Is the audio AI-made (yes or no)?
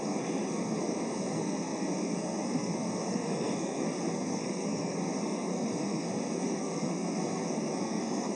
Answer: yes